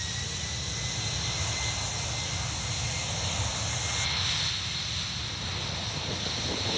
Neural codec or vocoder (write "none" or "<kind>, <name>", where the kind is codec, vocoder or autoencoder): none